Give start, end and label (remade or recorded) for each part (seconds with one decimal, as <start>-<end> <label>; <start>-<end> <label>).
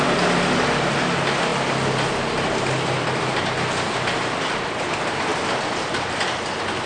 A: 0.0-6.9 recorded